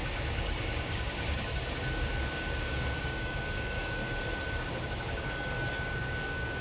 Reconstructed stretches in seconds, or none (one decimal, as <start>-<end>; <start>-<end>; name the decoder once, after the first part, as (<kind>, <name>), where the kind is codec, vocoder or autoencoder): 0.0-4.0 (codec, DAC); 4.5-6.6